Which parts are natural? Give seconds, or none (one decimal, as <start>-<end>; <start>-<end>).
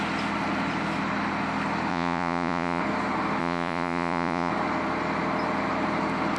0.0-1.9; 2.8-3.4; 4.5-6.4